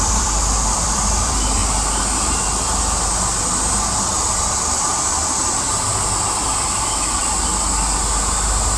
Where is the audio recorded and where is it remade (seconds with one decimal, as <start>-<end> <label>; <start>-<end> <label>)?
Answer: 0.0-1.6 remade; 1.6-3.9 recorded; 3.9-7.2 remade; 7.2-8.4 recorded; 8.4-8.8 remade